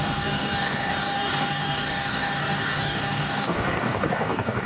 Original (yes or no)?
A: no